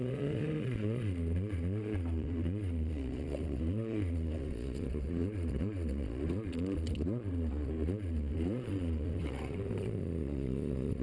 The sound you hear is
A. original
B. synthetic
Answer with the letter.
B